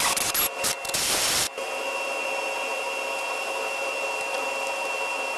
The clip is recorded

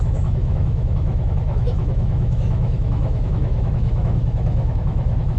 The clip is remade